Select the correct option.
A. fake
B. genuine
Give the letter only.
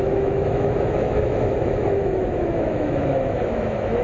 A